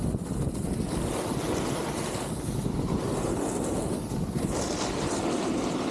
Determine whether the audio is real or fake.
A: real